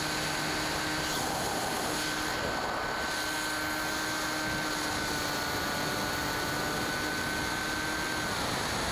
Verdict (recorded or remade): recorded